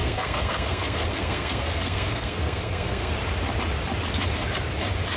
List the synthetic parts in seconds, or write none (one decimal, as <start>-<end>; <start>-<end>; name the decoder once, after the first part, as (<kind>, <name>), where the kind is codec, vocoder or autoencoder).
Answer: 0.0-3.1 (codec, SNAC)